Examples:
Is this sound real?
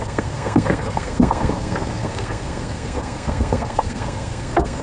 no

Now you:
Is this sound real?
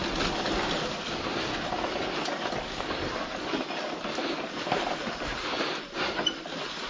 yes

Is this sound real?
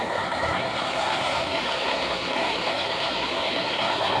no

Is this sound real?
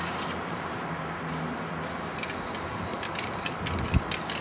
yes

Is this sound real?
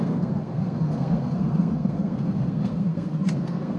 no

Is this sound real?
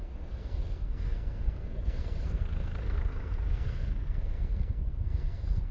no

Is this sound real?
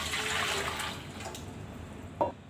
yes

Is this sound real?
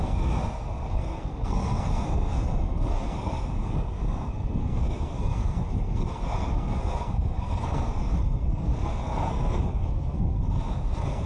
no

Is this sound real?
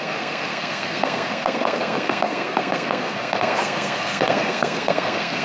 no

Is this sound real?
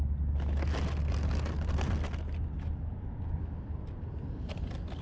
yes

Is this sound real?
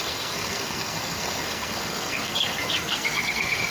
no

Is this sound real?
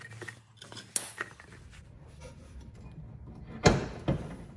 yes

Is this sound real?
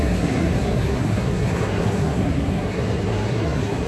no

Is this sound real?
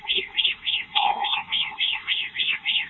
no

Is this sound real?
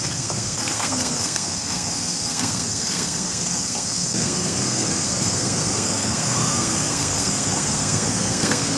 no